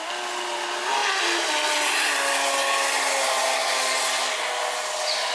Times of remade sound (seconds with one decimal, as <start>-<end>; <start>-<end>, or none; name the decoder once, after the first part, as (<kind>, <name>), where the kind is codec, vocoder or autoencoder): none